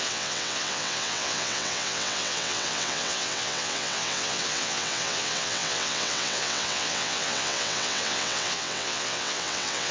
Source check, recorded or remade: remade